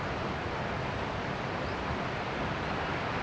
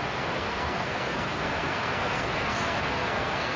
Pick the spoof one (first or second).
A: second